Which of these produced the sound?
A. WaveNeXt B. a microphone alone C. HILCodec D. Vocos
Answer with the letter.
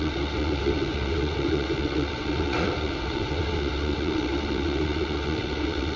A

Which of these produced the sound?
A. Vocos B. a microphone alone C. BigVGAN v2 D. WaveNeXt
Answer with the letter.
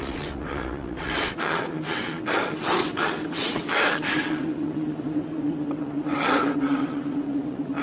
D